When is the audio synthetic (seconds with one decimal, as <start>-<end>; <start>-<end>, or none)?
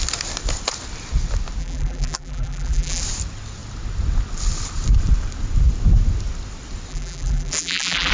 1.6-3.0; 6.9-8.1